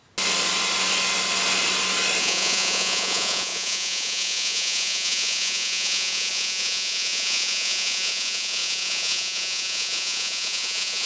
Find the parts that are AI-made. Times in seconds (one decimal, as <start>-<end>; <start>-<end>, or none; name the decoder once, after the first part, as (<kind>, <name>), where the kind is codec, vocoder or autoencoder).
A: 2.2-11.1 (vocoder, Vocos)